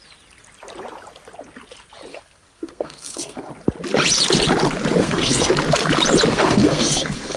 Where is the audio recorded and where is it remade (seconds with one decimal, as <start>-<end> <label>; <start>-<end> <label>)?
0.0-2.1 recorded; 2.1-3.5 remade; 3.5-5.0 recorded; 5.0-5.5 remade; 5.5-6.3 recorded; 6.3-7.4 remade